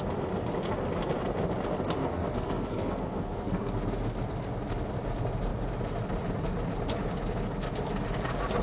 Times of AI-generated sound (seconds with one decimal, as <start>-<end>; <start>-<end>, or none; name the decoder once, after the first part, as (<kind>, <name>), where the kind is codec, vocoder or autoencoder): 2.0-3.7 (codec, SNAC)